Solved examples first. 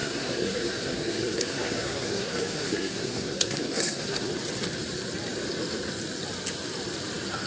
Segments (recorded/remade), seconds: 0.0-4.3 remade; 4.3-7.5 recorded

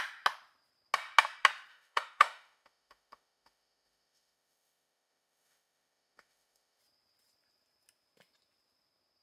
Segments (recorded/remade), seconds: 0.0-1.7 recorded; 1.7-6.8 remade; 6.8-9.2 recorded

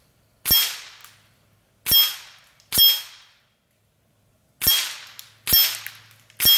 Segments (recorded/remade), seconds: 0.0-6.6 recorded

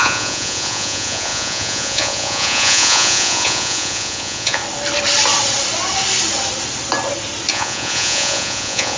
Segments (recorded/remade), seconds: 0.0-4.6 remade; 4.6-7.5 recorded; 7.5-9.0 remade

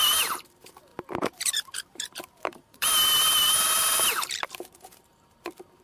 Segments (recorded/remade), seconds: 0.0-0.9 remade; 0.9-1.5 recorded; 1.5-5.8 remade

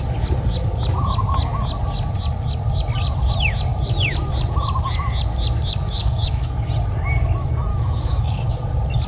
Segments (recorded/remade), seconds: 0.0-6.0 recorded; 6.0-6.7 remade; 6.7-7.7 recorded; 7.7-8.5 remade; 8.5-9.1 recorded

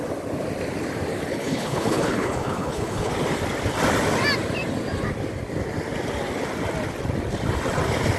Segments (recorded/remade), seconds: 0.0-1.3 recorded; 1.3-3.1 remade; 3.1-8.2 recorded